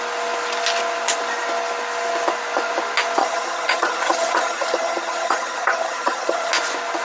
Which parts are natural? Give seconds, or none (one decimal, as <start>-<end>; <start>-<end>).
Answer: 0.0-3.2; 6.5-7.0